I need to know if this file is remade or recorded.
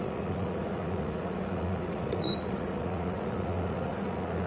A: remade